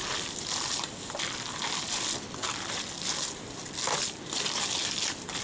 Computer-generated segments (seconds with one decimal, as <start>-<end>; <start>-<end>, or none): 0.0-5.4